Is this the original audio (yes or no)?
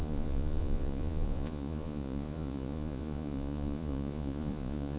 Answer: no